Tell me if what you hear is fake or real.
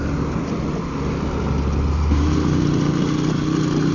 real